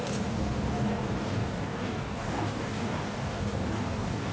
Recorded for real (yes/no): no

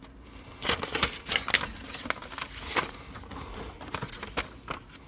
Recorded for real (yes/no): yes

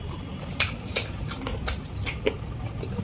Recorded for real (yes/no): yes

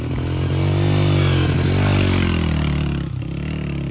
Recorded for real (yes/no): yes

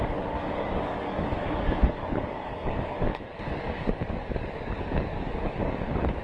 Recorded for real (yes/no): no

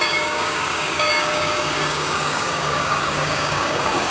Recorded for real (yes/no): no